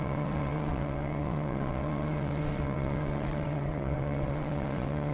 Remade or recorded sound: remade